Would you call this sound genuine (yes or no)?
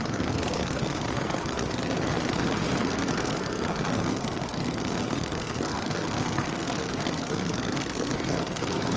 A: no